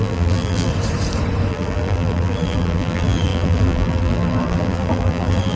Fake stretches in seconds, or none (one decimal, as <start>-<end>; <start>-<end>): 0.0-0.7; 1.5-5.6